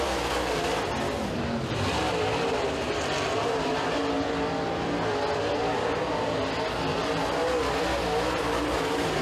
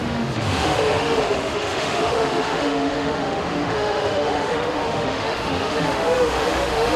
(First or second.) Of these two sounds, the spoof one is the second